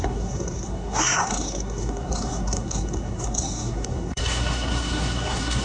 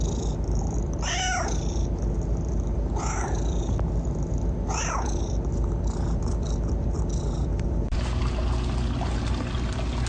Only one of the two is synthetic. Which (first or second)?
first